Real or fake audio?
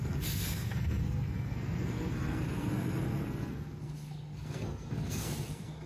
fake